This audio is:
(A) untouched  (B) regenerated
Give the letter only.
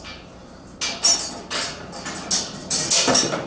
A